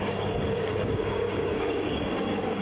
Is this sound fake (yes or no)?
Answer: yes